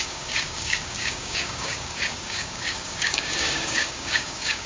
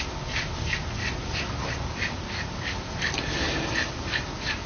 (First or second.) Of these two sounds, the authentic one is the second